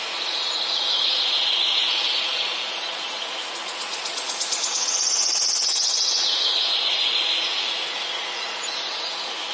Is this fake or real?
fake